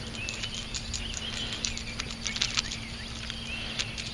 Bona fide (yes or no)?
yes